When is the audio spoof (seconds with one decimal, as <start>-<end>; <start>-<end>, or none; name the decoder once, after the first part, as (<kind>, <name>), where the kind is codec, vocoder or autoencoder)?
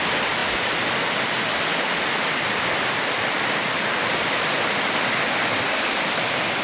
none